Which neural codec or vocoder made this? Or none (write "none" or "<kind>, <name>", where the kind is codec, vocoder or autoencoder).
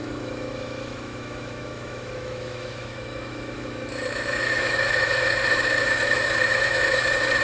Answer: autoencoder, DAC-VAE